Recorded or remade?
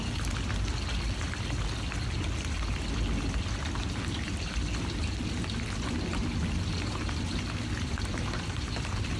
recorded